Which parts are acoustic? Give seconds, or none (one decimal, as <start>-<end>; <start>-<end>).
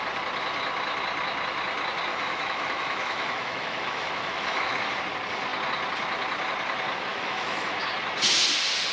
0.0-2.1; 4.8-7.1; 7.8-8.9